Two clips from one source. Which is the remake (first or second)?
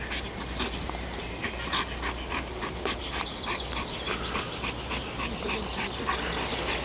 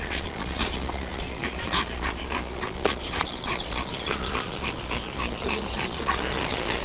second